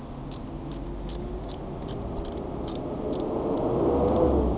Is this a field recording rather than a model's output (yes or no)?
yes